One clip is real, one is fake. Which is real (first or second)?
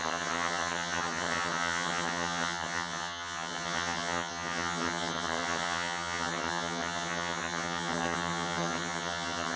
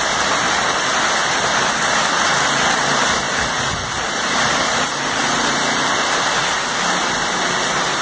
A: second